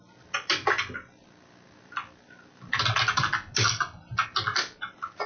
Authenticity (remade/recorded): recorded